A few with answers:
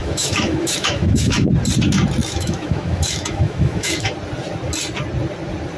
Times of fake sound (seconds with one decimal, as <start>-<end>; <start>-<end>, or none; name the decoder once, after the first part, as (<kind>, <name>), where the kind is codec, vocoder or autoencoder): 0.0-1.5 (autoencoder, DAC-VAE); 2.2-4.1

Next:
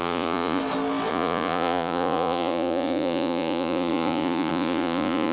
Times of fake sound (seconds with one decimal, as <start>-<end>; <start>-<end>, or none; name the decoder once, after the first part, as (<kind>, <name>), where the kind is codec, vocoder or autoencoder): 0.0-0.6 (vocoder, Vocos); 1.1-5.3

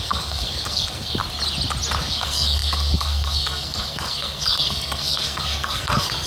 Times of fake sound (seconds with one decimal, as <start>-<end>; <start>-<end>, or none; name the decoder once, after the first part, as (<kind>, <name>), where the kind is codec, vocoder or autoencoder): 0.0-1.2 (codec, SNAC); 2.0-6.3

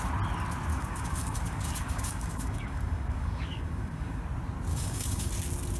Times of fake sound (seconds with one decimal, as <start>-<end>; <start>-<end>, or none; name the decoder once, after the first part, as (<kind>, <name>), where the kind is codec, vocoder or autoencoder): 0.7-4.2 (codec, DAC); 4.7-5.3

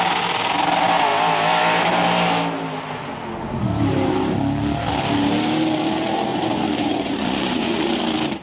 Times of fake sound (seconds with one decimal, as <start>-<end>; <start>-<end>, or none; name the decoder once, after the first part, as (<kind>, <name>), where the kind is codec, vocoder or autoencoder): 6.3-8.0 (vocoder, Vocos)